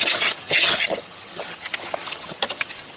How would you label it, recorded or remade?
remade